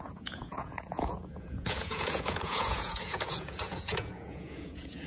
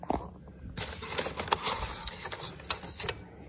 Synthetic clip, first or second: first